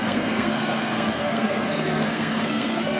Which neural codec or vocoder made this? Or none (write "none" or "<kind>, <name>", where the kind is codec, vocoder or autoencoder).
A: codec, SNAC